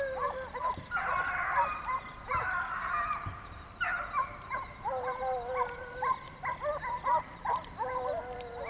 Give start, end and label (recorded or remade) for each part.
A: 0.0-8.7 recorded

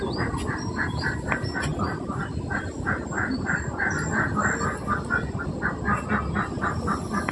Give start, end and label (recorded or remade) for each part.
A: 0.0-7.3 recorded

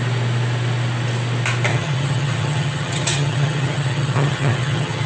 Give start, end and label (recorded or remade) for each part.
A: 0.0-1.7 recorded; 1.7-5.1 remade

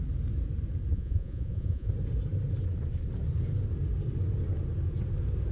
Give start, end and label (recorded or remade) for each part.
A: 0.0-0.9 recorded; 0.9-1.9 remade; 1.9-5.5 recorded

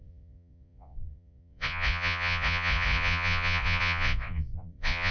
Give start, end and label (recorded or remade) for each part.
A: 0.0-5.1 remade

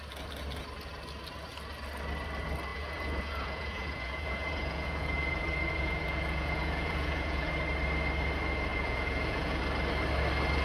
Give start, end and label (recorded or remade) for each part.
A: 0.0-2.7 recorded; 2.7-7.5 remade; 7.5-8.7 recorded; 8.7-9.6 remade; 9.6-10.6 recorded

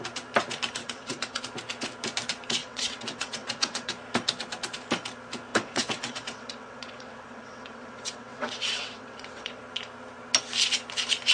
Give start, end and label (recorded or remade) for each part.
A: 0.0-0.8 recorded; 0.8-1.4 remade; 1.4-2.6 recorded; 2.6-3.9 remade; 3.9-5.5 recorded; 5.5-9.6 remade; 9.6-11.3 recorded